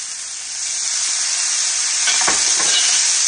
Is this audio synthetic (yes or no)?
no